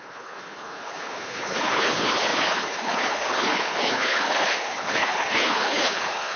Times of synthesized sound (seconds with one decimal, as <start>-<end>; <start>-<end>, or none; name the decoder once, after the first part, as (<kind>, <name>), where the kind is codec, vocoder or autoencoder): 0.0-6.4 (codec, HILCodec)